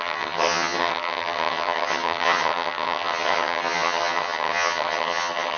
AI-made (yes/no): yes